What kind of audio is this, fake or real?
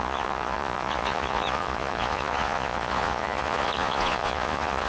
fake